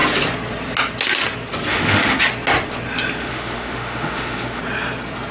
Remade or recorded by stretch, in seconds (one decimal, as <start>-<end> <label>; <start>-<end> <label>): 0.0-1.7 recorded; 1.7-2.2 remade; 2.2-3.2 recorded; 3.2-4.6 remade; 4.6-5.3 recorded